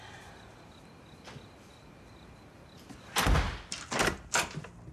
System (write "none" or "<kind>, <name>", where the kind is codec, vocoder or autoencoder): none